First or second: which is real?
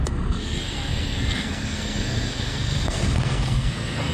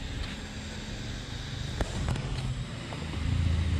second